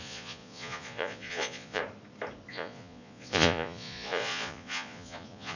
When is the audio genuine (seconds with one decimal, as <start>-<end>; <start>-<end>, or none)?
1.8-2.5

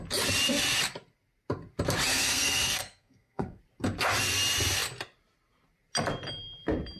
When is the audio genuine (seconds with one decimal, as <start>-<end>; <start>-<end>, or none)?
0.0-2.1; 3.6-7.0

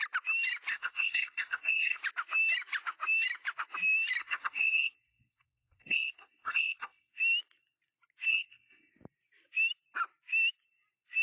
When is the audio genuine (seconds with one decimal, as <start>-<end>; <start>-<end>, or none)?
0.0-0.7; 2.0-4.2; 7.2-8.3; 8.9-11.2